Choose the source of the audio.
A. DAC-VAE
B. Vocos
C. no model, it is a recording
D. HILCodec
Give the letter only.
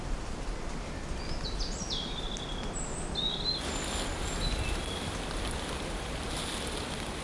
C